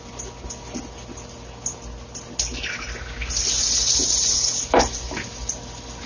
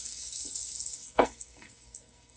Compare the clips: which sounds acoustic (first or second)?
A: first